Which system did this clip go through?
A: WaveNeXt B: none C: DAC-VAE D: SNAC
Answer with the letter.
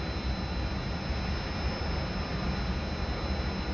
B